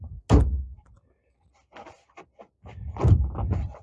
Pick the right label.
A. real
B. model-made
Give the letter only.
A